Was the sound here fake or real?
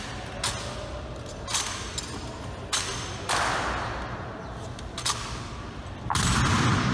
real